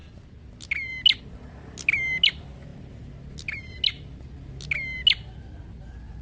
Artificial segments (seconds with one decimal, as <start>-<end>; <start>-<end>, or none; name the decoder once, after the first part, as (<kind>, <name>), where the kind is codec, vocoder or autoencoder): none